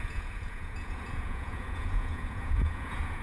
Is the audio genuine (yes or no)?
no